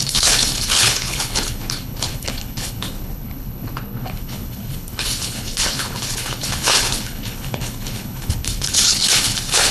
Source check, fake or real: fake